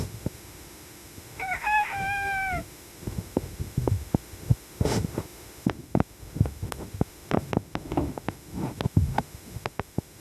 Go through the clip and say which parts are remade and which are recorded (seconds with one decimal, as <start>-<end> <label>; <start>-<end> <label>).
0.0-10.2 remade